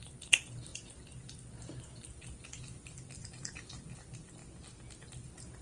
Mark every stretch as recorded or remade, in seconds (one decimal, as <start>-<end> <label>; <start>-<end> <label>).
0.0-4.4 remade; 4.4-5.0 recorded; 5.0-5.6 remade